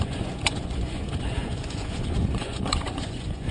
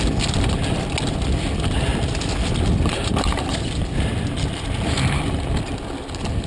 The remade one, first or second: first